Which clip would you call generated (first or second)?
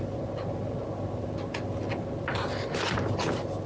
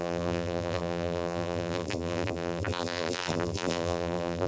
second